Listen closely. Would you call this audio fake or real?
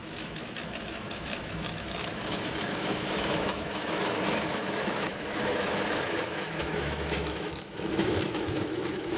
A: fake